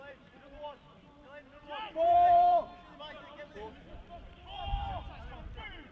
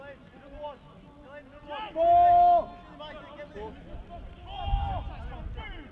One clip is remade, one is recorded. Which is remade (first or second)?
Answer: first